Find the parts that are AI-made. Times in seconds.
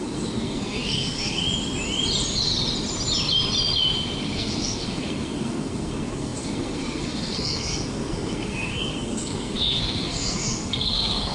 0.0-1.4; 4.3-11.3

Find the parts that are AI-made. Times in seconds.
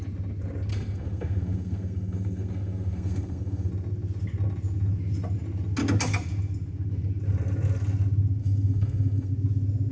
0.7-3.7; 8.4-9.3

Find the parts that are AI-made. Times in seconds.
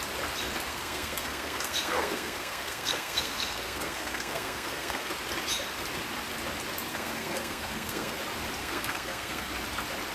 0.7-5.1; 6.9-8.2; 8.6-9.5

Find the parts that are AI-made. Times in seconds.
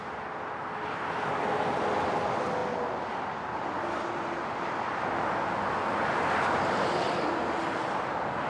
none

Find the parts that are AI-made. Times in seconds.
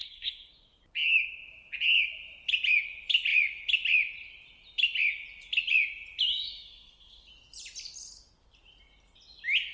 0.0-0.5; 6.3-7.3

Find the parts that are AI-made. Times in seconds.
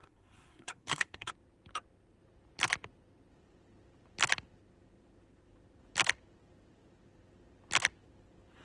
0.0-1.3